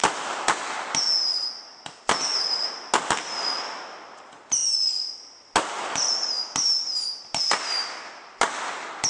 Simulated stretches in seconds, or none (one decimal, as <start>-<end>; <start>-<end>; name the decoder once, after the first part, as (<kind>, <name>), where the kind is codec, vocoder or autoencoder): none